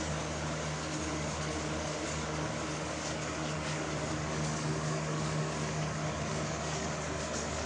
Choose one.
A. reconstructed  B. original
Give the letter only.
A